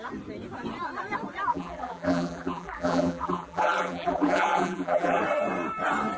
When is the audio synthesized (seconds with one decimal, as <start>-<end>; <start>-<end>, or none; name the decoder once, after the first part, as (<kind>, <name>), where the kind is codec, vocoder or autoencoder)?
1.5-5.2 (vocoder, BigVGAN v2)

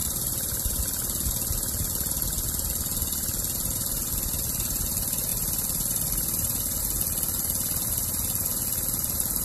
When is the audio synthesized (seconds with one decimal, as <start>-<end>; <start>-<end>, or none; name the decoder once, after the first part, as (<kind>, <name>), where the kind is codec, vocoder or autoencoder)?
0.0-0.8 (vocoder, BigVGAN v2); 5.3-6.8

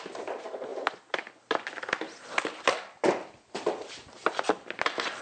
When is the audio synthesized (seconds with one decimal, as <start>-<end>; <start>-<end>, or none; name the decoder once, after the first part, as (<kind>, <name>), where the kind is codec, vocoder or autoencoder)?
none

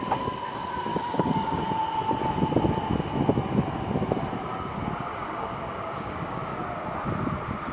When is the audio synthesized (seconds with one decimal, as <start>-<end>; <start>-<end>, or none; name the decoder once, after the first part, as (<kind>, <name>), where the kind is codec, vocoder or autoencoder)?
0.9-1.6 (codec, DAC); 5.1-6.6